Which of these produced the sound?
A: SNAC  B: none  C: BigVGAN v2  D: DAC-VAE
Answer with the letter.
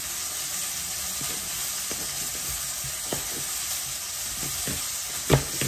B